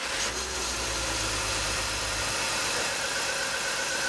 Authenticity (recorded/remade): recorded